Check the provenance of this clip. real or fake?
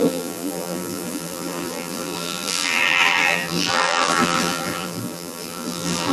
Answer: fake